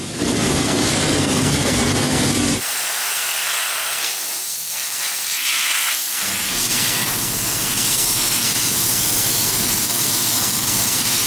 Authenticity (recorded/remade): remade